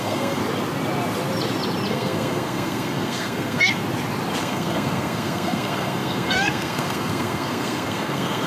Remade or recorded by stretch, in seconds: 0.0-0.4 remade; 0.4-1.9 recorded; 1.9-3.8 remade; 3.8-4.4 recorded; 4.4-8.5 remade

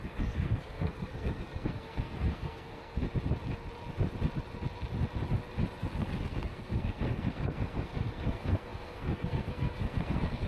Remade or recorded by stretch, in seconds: 0.0-3.0 remade; 3.0-5.8 recorded; 5.8-10.5 remade